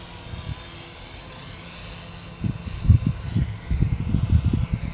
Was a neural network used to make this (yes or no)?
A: no